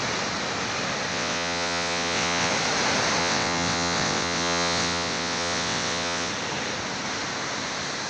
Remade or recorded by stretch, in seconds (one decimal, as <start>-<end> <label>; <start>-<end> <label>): 0.0-1.1 recorded; 1.1-2.5 remade; 2.5-3.2 recorded; 3.2-6.3 remade; 6.3-8.1 recorded